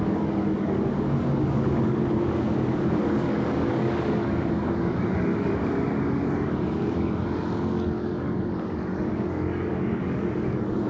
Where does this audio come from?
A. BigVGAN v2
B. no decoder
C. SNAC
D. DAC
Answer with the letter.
D